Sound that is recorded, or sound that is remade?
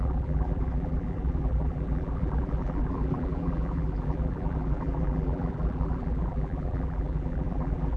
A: remade